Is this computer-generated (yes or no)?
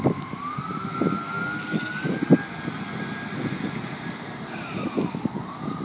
no